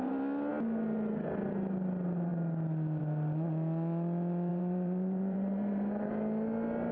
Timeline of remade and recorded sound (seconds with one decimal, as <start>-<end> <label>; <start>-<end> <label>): 0.0-4.5 recorded; 4.5-6.1 remade; 6.1-6.9 recorded